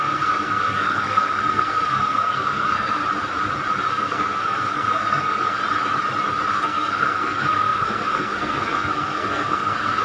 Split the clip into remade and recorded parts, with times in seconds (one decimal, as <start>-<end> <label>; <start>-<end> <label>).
0.0-3.0 remade; 3.0-3.9 recorded; 3.9-5.6 remade; 5.6-6.5 recorded; 6.5-10.0 remade